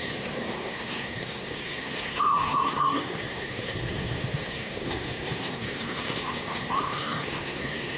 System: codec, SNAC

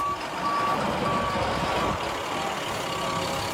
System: none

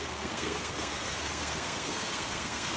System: codec, SNAC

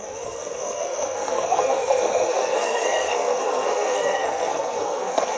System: codec, SNAC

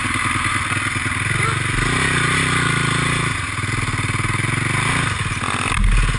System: none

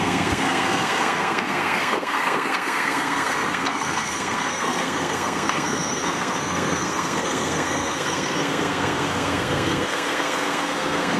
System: codec, SNAC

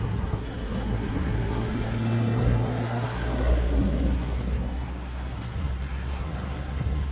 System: codec, SNAC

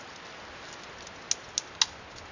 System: none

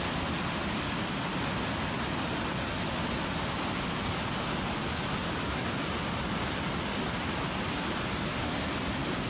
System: none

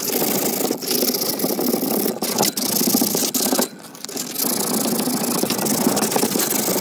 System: none